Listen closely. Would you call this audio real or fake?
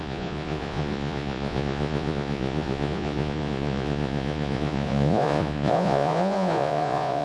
fake